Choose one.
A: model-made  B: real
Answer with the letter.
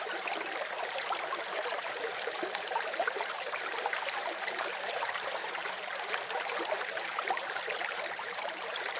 A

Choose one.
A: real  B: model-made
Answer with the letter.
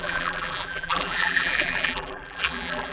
B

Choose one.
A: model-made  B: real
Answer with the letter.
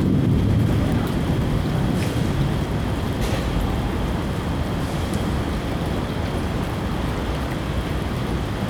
A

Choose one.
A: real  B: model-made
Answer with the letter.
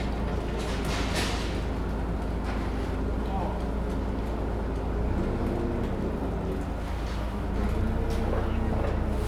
A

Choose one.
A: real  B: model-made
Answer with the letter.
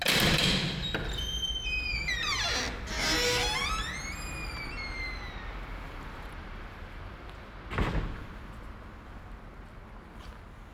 A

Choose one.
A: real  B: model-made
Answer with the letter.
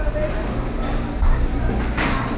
A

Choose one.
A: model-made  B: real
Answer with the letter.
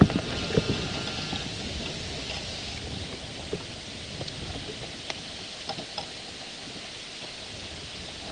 B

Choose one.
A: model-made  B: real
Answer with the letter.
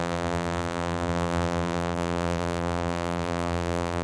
A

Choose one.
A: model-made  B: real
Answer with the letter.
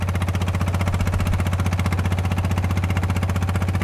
B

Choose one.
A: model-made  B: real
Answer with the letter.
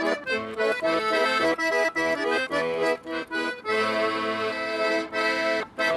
A